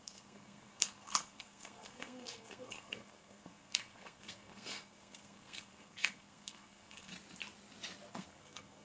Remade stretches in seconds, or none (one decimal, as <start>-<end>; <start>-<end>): 0.0-7.1; 8.1-8.8